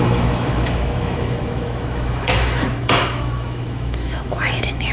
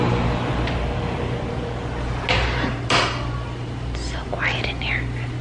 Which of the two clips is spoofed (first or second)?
first